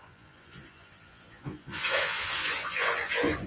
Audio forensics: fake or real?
fake